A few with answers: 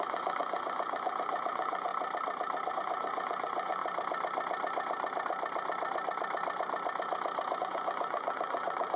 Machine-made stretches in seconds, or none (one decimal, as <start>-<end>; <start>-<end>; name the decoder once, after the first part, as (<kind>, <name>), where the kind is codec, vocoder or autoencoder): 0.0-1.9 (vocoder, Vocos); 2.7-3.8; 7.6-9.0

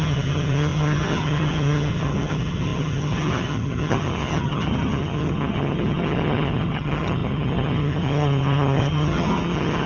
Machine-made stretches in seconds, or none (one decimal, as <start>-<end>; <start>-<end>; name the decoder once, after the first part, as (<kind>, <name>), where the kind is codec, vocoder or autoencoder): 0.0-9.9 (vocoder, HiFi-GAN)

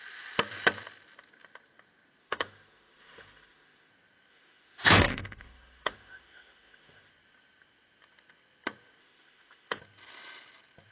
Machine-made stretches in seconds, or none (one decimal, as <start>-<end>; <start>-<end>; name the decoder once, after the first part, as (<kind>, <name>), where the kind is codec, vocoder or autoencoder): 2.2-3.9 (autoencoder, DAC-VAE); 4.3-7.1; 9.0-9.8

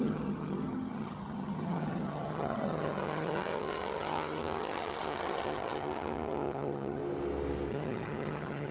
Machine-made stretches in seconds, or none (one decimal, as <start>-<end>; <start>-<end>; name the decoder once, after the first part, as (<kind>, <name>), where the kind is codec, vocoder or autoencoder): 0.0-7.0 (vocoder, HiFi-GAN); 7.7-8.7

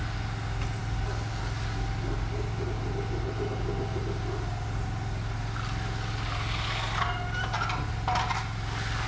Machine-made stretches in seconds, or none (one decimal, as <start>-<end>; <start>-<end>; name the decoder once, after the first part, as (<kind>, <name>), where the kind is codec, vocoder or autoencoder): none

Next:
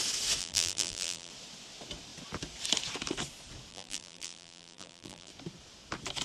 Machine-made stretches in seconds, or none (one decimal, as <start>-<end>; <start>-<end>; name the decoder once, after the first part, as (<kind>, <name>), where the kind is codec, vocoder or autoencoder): 0.4-1.3 (vocoder, BigVGAN v2); 3.7-5.3

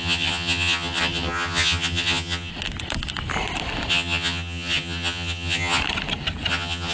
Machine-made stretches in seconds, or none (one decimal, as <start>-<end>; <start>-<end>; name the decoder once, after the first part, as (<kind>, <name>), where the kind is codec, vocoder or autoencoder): 0.0-2.5 (vocoder, HiFi-GAN); 3.9-5.8; 6.5-6.9

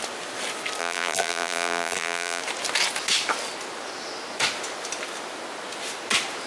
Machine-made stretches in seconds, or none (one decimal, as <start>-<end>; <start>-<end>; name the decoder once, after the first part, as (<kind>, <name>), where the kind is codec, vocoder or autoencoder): 0.8-2.4 (vocoder, BigVGAN v2)